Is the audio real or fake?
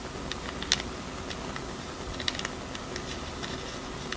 real